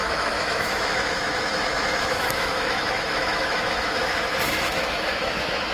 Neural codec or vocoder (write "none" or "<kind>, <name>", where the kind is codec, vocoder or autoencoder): autoencoder, DAC-VAE